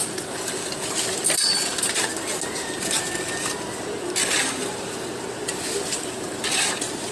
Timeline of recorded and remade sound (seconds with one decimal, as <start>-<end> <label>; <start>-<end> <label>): 0.0-7.1 recorded